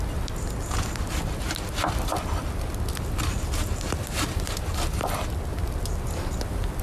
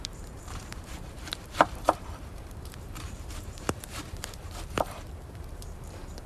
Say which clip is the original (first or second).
first